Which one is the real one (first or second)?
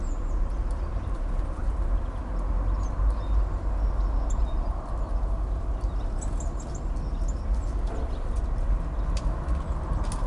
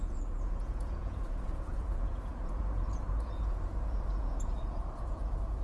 first